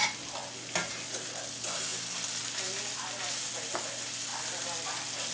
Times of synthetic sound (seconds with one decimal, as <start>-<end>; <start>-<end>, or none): none